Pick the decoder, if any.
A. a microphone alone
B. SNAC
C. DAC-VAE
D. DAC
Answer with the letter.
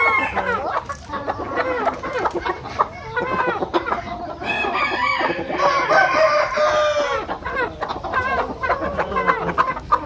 A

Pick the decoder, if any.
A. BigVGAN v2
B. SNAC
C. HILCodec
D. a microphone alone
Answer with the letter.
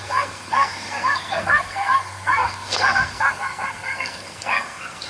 B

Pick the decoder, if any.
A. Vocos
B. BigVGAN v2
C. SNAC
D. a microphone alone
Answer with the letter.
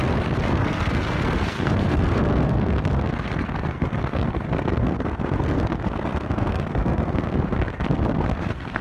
C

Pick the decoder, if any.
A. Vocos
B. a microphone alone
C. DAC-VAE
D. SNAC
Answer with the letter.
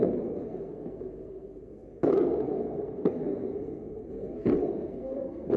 D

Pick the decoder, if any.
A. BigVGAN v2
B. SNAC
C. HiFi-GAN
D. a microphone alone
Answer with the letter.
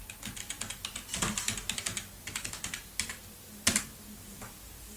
D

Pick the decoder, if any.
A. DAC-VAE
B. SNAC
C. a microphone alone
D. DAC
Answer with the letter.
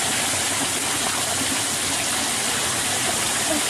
C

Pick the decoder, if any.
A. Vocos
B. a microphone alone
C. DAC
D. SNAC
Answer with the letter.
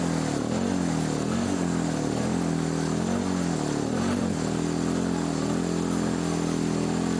B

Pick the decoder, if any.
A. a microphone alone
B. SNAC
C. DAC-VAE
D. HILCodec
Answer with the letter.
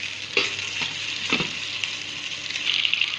A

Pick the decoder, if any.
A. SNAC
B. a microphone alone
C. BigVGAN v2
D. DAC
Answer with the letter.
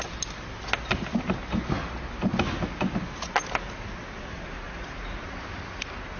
B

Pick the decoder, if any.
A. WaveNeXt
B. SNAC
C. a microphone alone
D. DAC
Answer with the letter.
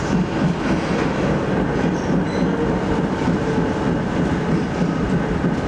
C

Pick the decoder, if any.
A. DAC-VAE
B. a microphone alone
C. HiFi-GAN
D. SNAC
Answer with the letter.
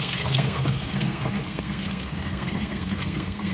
D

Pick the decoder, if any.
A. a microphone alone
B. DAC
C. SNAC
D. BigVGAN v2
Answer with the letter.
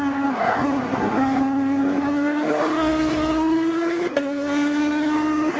C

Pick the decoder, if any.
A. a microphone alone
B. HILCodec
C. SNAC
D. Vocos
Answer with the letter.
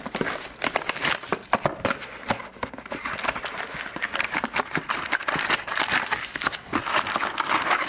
A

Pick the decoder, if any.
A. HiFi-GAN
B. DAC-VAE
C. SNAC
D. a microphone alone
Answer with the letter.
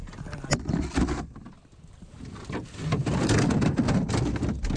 D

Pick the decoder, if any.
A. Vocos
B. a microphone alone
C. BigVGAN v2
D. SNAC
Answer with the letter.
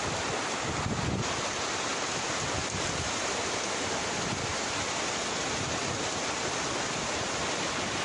B